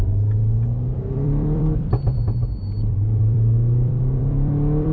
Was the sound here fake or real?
fake